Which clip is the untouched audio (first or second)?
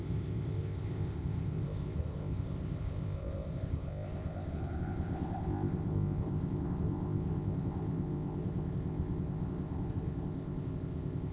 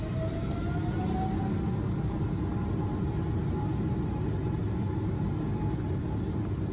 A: second